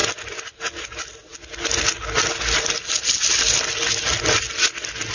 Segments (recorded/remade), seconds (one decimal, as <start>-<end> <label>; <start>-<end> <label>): 0.0-5.1 recorded